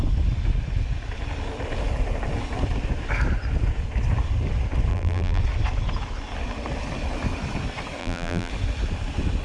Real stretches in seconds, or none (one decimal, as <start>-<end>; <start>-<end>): 0.0-4.9; 5.4-8.0; 8.5-9.4